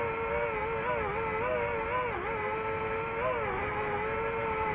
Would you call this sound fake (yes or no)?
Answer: no